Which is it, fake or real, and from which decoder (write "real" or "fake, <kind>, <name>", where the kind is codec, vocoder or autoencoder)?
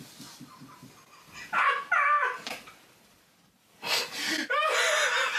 real